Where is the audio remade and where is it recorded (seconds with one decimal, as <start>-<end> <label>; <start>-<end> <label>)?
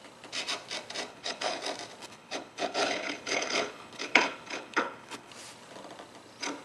0.0-1.1 recorded; 1.1-1.6 remade; 1.6-2.0 recorded; 2.0-5.3 remade; 5.3-6.6 recorded